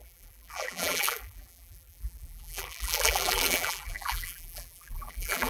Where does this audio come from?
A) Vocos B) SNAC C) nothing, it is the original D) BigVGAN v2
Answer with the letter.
D